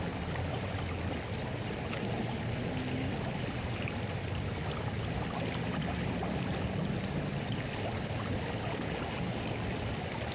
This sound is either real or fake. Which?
real